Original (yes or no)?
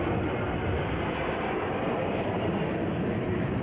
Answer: yes